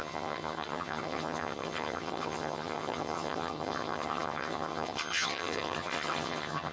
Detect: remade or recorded remade